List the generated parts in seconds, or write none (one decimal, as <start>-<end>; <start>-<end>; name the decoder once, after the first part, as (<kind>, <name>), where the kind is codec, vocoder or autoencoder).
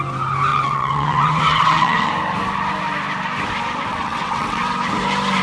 0.5-2.1 (vocoder, WaveNeXt); 3.9-4.7